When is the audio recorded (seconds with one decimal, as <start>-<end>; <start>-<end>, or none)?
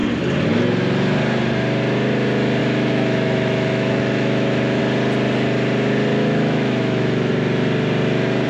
0.0-2.6; 4.8-6.1; 7.3-8.5